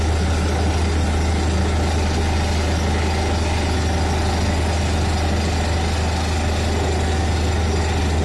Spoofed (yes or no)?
no